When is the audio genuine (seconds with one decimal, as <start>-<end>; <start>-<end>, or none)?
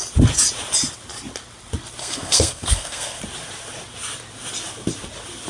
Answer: 0.0-2.0; 3.2-5.5